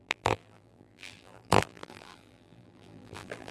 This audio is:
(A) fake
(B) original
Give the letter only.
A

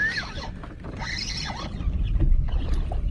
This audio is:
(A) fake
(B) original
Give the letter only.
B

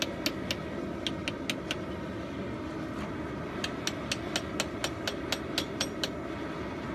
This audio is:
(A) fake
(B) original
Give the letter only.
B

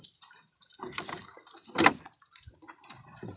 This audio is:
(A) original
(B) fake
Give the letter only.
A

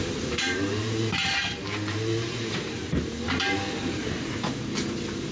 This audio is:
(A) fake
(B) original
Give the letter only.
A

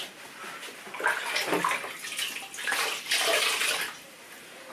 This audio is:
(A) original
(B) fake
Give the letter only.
A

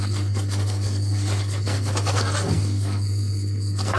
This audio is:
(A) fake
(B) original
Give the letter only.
A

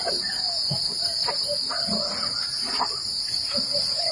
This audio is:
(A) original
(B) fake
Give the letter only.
A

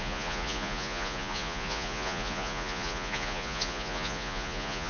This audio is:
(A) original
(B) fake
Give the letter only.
B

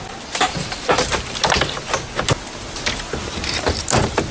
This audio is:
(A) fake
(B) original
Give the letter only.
B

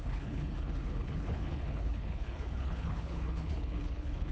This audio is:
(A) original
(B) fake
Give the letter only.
B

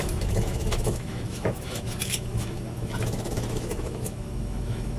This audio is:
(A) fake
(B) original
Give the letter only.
A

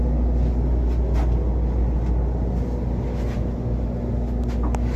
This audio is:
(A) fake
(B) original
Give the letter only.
B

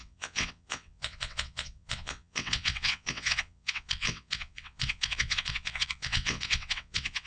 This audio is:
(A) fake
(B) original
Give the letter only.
A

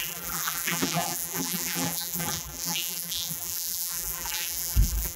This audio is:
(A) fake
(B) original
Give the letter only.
A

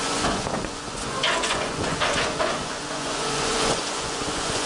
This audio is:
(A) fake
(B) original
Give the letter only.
A